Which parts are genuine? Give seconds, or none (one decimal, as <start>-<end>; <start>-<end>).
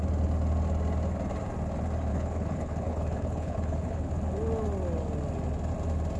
0.0-2.1; 4.1-6.2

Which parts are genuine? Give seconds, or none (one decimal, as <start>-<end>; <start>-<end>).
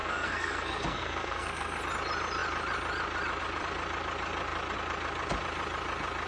1.8-6.3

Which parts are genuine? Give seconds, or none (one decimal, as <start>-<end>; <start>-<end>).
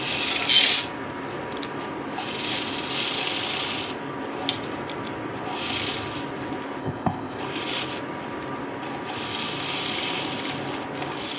0.0-6.8; 7.4-11.4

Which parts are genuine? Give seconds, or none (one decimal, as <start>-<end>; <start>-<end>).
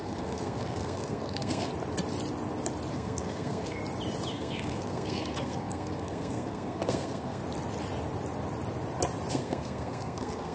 1.7-2.9; 3.8-4.3; 7.4-9.3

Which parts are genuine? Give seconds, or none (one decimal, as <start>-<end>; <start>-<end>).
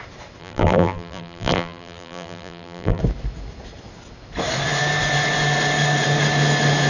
0.0-0.4; 3.0-6.9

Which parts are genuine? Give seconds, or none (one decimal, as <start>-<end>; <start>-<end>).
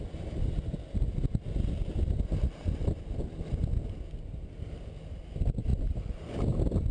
0.0-6.9